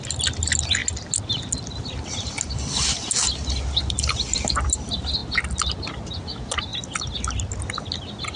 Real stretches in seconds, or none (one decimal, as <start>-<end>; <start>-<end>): 0.0-8.4